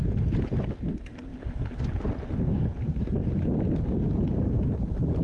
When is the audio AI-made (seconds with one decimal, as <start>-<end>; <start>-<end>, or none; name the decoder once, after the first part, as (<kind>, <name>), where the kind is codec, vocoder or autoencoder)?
1.3-2.1 (vocoder, BigVGAN v2)